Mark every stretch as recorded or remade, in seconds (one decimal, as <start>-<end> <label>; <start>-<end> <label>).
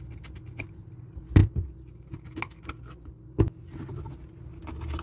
0.0-5.0 recorded